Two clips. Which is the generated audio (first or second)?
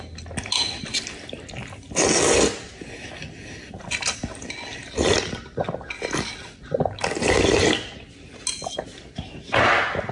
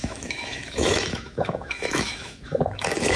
second